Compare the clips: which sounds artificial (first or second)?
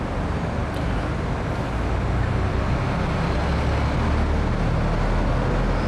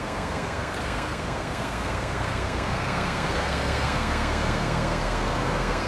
second